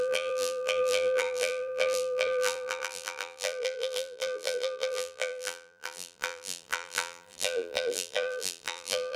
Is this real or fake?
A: fake